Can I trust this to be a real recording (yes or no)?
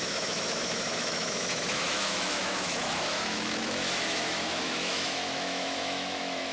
no